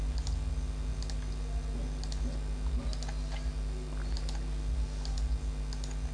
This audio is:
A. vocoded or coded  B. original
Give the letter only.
B